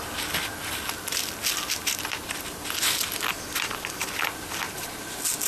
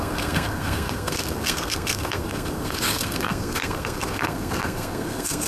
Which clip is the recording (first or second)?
first